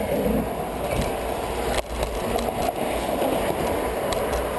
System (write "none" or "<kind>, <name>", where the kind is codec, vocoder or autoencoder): none